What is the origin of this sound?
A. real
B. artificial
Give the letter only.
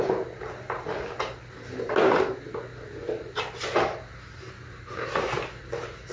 A